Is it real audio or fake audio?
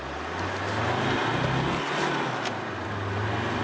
real